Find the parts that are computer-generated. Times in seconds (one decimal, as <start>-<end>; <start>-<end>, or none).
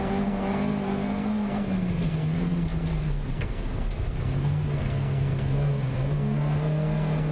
0.0-7.3